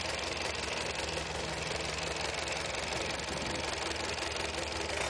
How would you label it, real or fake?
real